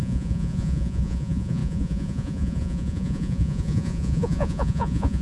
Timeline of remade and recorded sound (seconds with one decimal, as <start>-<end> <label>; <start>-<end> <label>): 0.0-5.2 remade